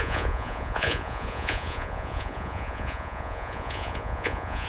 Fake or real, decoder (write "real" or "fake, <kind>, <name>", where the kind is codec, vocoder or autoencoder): fake, vocoder, Vocos